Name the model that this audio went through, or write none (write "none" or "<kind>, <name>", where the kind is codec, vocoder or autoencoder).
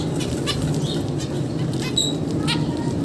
none